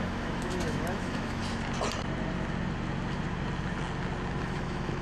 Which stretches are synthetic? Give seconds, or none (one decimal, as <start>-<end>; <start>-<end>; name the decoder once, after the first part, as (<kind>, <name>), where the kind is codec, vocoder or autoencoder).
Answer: 0.0-1.4 (autoencoder, DAC-VAE); 4.4-5.0